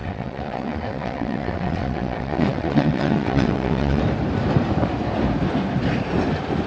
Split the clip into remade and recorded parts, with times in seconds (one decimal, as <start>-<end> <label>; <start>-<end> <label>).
0.0-4.0 remade; 4.0-6.7 recorded